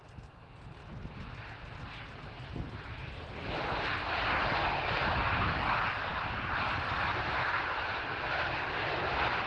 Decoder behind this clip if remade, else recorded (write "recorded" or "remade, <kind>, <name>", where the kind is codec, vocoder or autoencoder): recorded